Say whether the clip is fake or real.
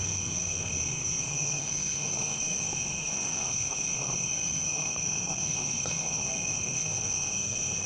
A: fake